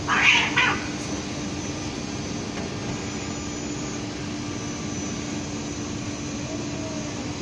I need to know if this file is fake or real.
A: real